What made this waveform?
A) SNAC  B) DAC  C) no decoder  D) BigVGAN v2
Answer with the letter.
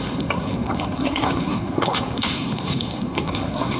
A